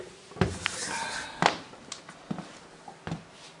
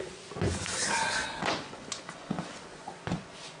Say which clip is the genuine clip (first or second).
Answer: first